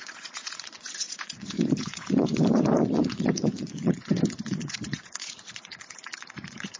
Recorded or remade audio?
remade